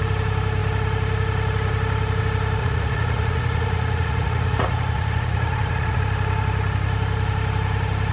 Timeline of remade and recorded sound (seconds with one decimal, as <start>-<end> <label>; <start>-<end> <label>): 0.0-2.6 recorded; 2.6-6.0 remade; 6.0-8.1 recorded